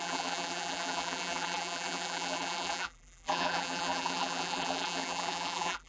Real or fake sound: fake